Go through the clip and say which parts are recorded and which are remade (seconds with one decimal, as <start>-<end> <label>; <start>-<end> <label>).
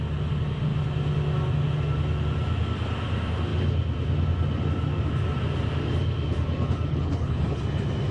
0.0-6.9 recorded; 6.9-7.6 remade; 7.6-8.1 recorded